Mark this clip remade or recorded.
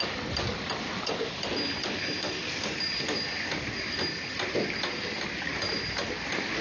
recorded